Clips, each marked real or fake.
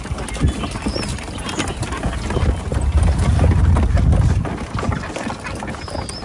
real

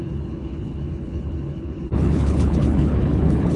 fake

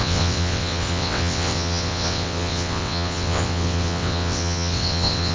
fake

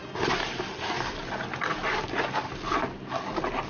real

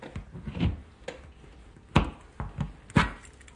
real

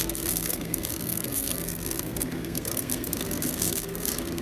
fake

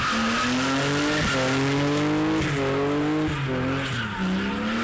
real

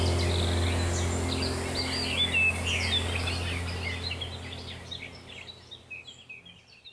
real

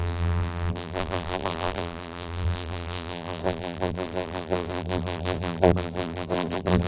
fake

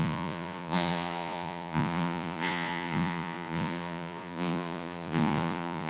fake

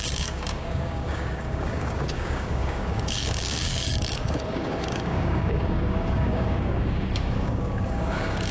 fake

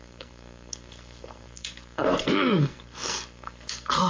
fake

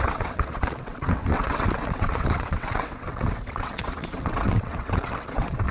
fake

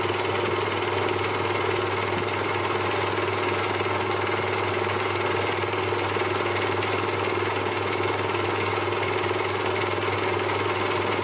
real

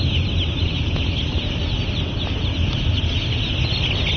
real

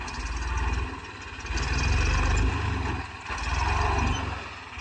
real